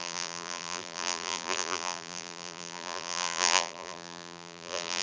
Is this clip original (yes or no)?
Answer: no